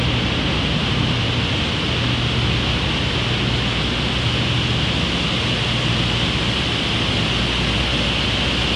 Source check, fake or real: real